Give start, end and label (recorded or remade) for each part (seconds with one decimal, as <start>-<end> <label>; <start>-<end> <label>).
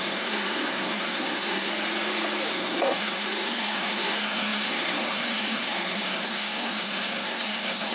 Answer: 0.0-1.7 remade; 1.7-2.5 recorded; 2.5-7.9 remade